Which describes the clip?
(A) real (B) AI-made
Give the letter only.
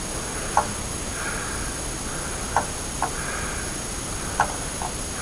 A